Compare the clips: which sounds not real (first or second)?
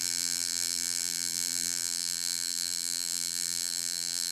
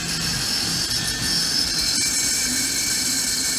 first